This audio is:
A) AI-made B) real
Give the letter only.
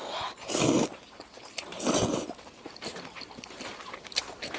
B